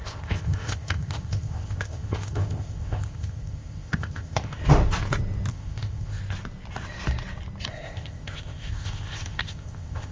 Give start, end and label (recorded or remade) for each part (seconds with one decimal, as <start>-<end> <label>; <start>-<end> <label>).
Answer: 0.0-4.6 remade; 4.6-5.5 recorded; 5.5-6.2 remade; 6.2-7.7 recorded; 7.7-10.1 remade